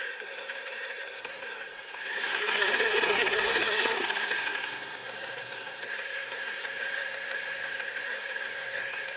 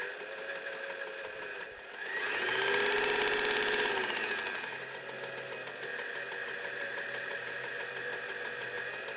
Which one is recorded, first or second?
second